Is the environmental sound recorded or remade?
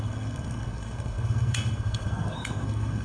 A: remade